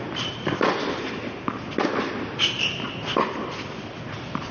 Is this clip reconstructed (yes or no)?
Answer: no